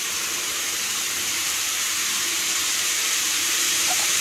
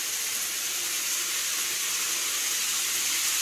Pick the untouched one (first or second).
second